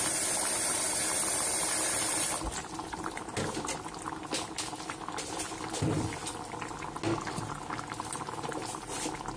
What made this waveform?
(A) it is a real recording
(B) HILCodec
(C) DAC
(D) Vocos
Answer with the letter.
A